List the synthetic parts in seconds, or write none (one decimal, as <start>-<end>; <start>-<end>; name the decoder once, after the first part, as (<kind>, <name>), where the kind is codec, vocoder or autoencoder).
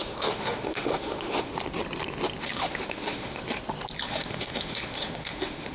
0.0-1.5 (autoencoder, DAC-VAE); 2.4-3.4; 4.0-5.7